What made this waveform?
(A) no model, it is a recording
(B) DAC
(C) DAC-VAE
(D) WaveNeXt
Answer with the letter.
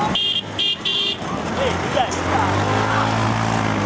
A